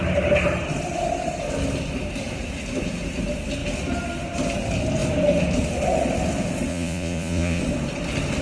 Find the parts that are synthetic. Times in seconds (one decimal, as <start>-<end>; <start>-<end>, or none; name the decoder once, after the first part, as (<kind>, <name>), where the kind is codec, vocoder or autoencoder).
6.7-7.6 (vocoder, Vocos)